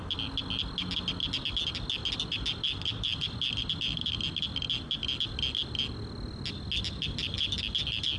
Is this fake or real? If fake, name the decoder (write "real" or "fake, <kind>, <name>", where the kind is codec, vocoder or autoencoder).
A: real